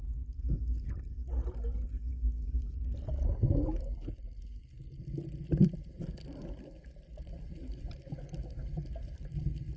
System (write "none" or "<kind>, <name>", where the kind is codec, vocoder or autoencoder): none